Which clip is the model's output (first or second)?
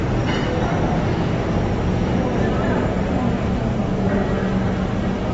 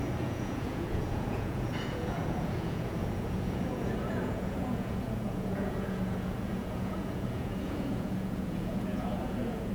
second